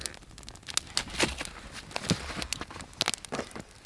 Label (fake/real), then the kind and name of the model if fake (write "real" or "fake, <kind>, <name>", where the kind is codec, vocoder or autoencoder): real